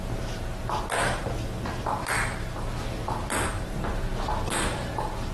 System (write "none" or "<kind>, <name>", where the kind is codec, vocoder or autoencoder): none